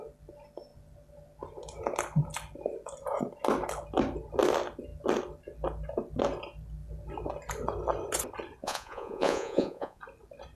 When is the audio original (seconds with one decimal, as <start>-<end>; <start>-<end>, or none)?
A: 0.0-8.6; 10.0-10.6